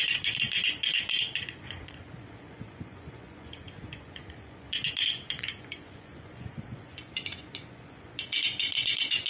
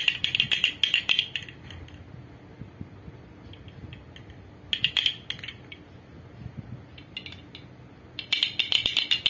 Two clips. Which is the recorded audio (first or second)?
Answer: second